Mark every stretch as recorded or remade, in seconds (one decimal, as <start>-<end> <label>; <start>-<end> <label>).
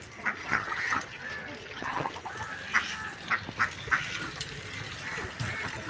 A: 0.0-0.4 recorded; 0.4-1.2 remade; 1.2-1.6 recorded; 1.6-2.1 remade; 2.1-5.9 recorded